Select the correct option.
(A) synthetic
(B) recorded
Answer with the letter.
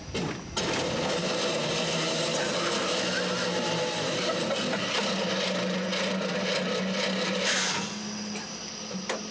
B